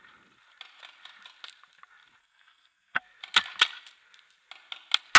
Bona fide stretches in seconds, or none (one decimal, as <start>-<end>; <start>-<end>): 0.0-2.2; 3.0-5.2